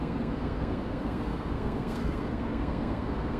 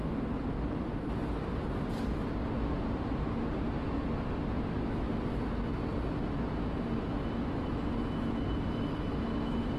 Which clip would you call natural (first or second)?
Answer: second